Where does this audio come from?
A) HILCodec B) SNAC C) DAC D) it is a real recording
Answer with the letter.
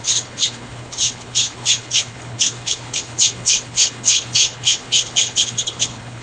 A